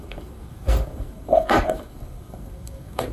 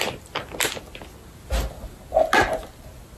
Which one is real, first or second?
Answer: second